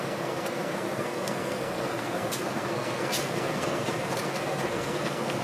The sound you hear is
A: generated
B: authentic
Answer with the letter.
A